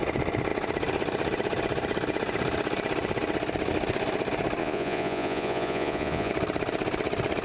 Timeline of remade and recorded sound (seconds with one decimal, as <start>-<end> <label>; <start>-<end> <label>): 0.0-4.6 recorded; 4.6-6.3 remade; 6.3-7.4 recorded